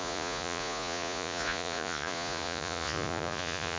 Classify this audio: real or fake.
fake